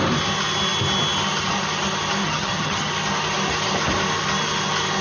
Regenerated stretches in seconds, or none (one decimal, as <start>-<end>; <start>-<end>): 2.2-2.9